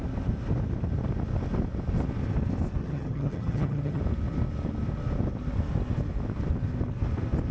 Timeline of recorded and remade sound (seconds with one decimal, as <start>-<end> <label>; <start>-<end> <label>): 0.0-2.8 recorded; 2.8-4.0 remade; 4.0-7.5 recorded